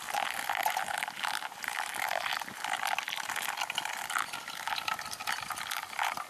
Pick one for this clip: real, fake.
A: real